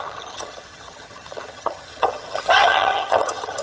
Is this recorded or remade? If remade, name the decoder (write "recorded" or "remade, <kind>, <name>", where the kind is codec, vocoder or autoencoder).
remade, vocoder, HiFi-GAN